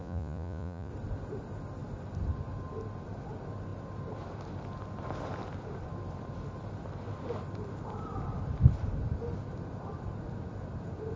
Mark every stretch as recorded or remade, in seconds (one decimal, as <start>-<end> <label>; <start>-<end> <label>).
0.0-0.9 remade; 0.9-11.2 recorded